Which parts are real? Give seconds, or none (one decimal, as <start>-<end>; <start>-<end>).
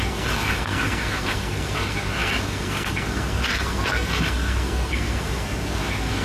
none